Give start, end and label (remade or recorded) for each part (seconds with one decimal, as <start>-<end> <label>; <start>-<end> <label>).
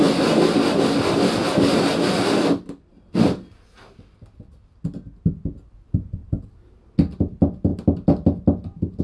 0.0-6.2 recorded; 6.2-6.8 remade; 6.8-9.0 recorded